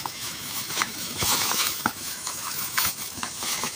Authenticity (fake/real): fake